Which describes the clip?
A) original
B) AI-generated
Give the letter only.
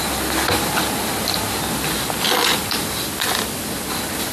A